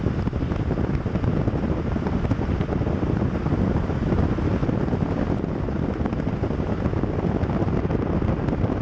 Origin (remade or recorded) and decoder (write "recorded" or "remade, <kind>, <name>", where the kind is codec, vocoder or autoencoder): recorded